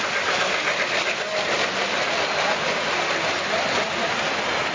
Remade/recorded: recorded